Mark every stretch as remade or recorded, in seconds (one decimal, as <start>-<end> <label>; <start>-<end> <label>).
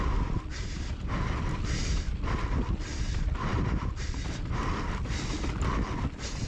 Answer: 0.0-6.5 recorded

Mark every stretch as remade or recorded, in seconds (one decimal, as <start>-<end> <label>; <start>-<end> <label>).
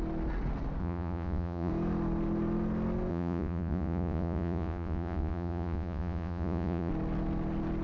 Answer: 0.0-0.8 recorded; 0.8-1.7 remade; 1.7-3.1 recorded; 3.1-6.9 remade; 6.9-7.8 recorded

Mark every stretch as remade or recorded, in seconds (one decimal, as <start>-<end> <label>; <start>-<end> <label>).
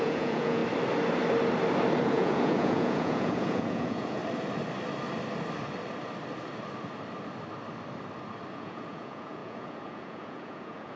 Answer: 0.0-0.6 remade; 0.6-2.0 recorded; 2.0-4.2 remade; 4.2-8.5 recorded; 8.5-11.0 remade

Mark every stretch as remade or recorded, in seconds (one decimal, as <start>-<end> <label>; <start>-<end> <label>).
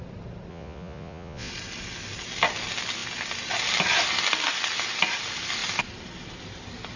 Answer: 0.0-0.5 recorded; 0.5-1.5 remade; 1.5-7.0 recorded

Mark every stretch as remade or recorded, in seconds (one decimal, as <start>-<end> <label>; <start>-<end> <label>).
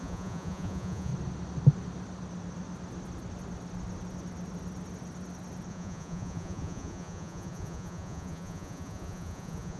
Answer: 0.0-1.1 remade; 1.1-5.7 recorded; 5.7-9.8 remade